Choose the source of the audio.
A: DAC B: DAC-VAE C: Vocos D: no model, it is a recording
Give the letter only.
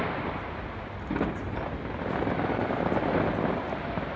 D